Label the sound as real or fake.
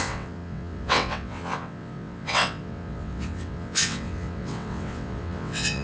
fake